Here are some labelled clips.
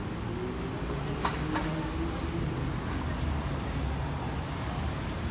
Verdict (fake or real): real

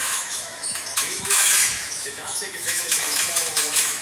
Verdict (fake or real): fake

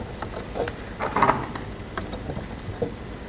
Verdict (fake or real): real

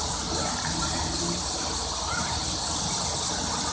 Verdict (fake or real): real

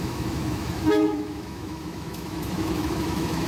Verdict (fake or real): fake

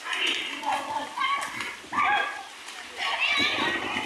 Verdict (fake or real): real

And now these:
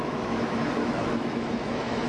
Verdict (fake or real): fake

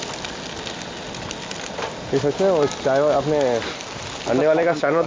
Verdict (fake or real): real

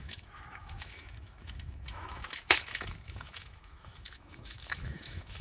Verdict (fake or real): fake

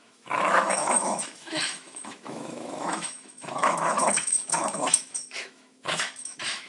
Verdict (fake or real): fake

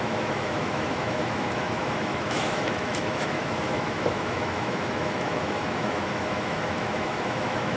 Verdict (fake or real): fake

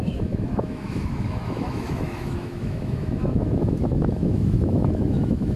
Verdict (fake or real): fake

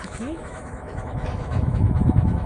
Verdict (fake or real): fake